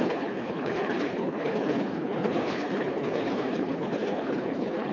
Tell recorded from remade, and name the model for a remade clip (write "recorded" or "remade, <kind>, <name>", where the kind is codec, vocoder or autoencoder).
remade, codec, HILCodec